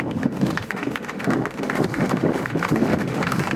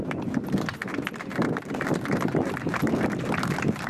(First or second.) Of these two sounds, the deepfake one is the first